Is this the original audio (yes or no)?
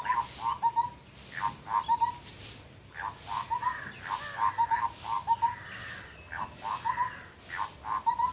yes